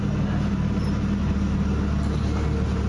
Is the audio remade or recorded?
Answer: recorded